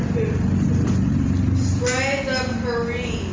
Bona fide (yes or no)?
yes